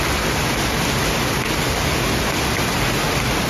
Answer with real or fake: real